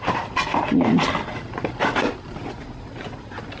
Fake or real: real